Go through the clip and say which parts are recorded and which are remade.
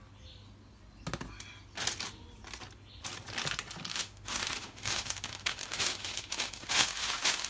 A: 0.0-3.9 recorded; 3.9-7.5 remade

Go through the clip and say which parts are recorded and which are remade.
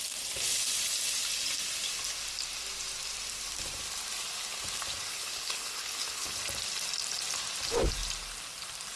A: 0.0-5.1 recorded; 5.1-6.4 remade; 6.4-9.0 recorded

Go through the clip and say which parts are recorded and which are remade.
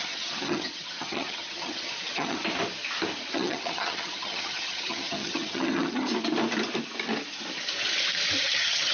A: 0.0-2.4 remade; 2.4-3.2 recorded; 3.2-6.1 remade; 6.1-8.4 recorded; 8.4-8.9 remade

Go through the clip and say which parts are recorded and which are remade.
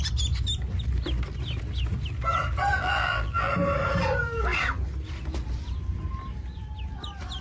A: 0.0-2.7 recorded; 2.7-3.5 remade; 3.5-7.4 recorded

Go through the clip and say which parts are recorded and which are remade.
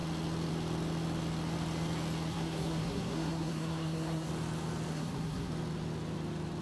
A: 0.0-2.3 recorded; 2.3-4.3 remade; 4.3-4.9 recorded; 4.9-5.5 remade; 5.5-6.6 recorded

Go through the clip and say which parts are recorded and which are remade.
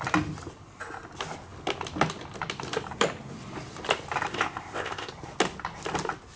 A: 0.0-4.3 recorded; 4.3-5.1 remade; 5.1-6.4 recorded